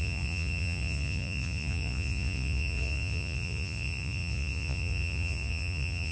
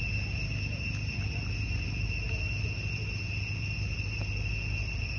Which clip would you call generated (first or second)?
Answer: first